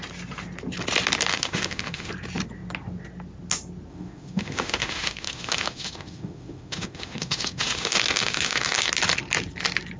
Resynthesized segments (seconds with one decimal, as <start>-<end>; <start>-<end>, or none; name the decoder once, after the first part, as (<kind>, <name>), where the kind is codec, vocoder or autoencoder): 1.3-2.1 (autoencoder, DAC-VAE); 3.9-8.9